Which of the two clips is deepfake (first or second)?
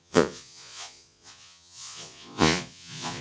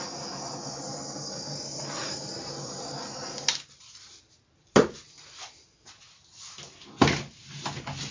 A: first